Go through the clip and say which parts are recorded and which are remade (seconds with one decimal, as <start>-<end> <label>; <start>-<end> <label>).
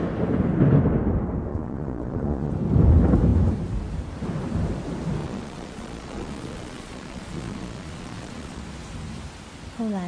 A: 0.0-1.5 recorded; 1.5-2.5 remade; 2.5-5.2 recorded; 5.2-8.6 remade; 8.6-10.1 recorded